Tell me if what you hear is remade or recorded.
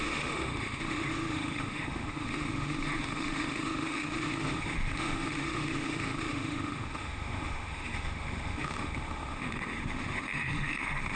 remade